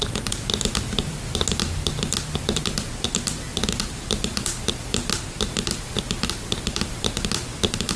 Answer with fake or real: real